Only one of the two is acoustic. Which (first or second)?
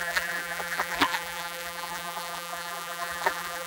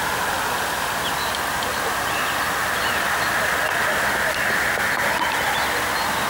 second